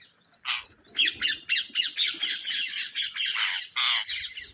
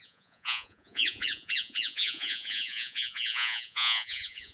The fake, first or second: second